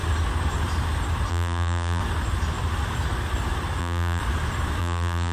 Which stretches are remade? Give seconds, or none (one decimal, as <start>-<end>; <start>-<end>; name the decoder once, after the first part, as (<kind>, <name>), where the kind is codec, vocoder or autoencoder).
1.3-2.0 (vocoder, BigVGAN v2); 3.8-4.2; 4.8-5.3